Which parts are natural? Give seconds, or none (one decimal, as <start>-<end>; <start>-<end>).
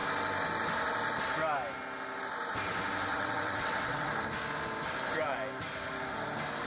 0.0-3.1; 4.1-6.7